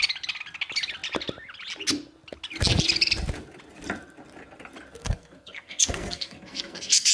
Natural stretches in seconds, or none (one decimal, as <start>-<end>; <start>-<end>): 0.0-5.0